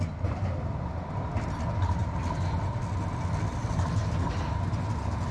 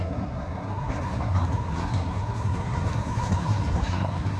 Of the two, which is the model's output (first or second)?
second